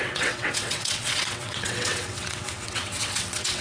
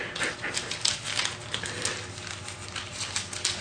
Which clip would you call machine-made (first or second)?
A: first